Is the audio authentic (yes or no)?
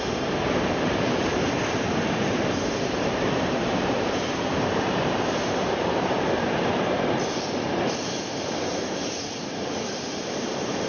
no